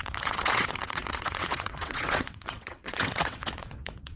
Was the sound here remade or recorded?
remade